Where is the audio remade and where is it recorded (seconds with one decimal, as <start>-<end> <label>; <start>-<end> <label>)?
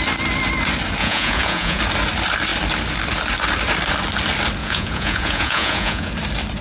0.0-1.0 recorded; 1.0-1.8 remade; 1.8-4.6 recorded; 4.6-6.1 remade; 6.1-6.6 recorded